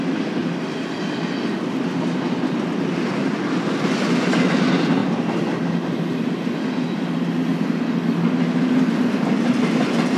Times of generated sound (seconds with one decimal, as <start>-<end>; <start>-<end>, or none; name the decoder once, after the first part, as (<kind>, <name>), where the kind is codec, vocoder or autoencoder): none